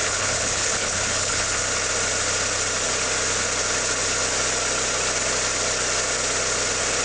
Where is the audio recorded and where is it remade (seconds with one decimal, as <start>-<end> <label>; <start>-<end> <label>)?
0.0-1.6 remade; 1.6-7.0 recorded